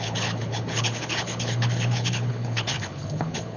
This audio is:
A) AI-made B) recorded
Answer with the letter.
A